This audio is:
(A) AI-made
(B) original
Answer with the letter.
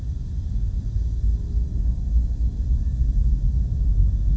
B